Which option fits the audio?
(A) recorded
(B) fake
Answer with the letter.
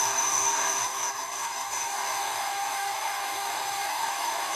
B